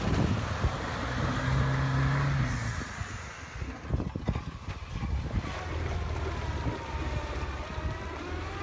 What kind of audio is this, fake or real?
real